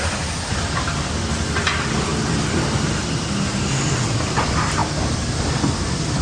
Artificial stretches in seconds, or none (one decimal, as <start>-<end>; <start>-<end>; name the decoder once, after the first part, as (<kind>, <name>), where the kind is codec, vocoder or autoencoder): none